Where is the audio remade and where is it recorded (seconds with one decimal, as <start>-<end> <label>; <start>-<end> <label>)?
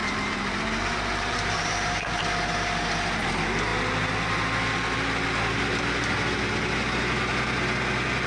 0.0-2.2 remade; 2.2-8.3 recorded